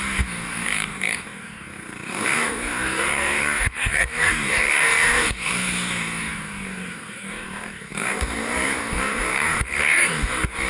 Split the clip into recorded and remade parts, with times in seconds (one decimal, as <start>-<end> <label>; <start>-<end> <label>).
0.0-10.7 remade